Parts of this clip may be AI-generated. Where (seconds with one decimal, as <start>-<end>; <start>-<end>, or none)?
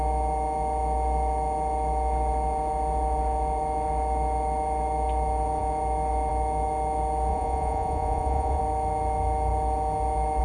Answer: 7.3-8.6